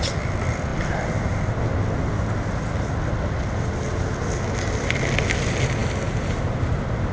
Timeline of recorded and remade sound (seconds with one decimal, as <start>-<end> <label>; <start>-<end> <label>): 0.0-7.1 recorded